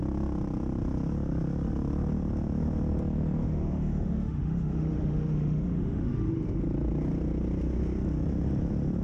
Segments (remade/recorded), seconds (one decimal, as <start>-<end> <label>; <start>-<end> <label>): 0.0-3.4 recorded; 3.4-6.6 remade; 6.6-9.0 recorded